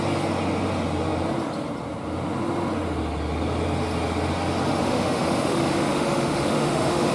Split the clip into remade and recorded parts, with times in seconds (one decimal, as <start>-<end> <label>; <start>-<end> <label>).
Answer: 0.0-4.8 recorded; 4.8-7.1 remade